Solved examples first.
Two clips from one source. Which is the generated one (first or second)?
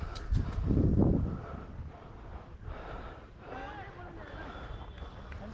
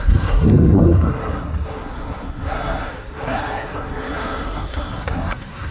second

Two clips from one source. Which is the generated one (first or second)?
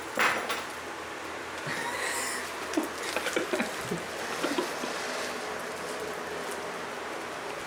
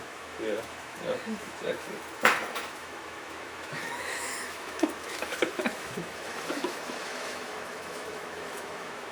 second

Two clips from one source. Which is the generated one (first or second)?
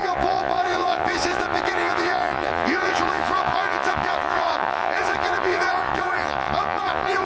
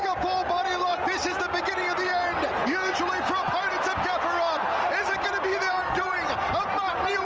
first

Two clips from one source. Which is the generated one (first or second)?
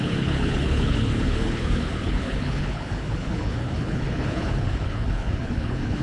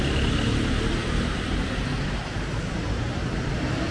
first